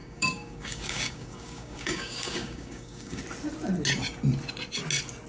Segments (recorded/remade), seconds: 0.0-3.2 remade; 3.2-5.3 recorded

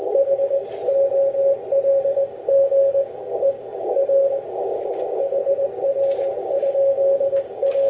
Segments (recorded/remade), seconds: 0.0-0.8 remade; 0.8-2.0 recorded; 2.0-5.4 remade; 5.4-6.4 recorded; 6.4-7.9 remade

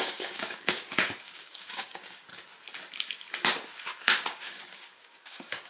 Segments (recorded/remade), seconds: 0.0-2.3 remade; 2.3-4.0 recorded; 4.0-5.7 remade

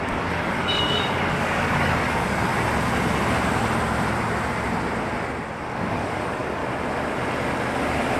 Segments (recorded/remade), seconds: 0.0-2.5 remade; 2.5-5.6 recorded; 5.6-6.6 remade; 6.6-8.2 recorded

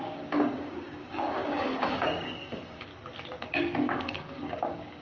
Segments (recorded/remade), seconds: 0.0-2.9 remade; 2.9-3.4 recorded; 3.4-5.0 remade